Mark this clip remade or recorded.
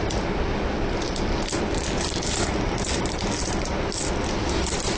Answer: recorded